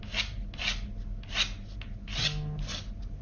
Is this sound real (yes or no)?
yes